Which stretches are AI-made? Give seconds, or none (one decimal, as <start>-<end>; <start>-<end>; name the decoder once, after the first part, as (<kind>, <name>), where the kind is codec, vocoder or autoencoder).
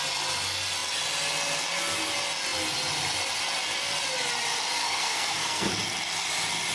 4.8-5.7 (codec, SNAC)